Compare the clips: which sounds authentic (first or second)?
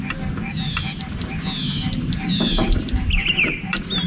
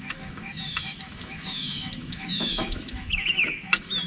first